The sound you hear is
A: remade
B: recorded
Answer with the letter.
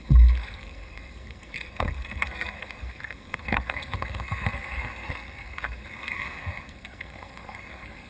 A